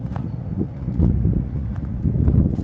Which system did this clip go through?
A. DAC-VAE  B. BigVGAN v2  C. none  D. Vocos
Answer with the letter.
D